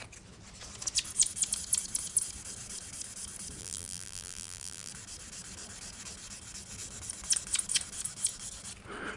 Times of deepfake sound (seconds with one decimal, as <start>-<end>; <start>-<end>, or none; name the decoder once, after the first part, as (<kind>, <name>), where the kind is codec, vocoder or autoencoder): 3.6-4.9 (vocoder, BigVGAN v2)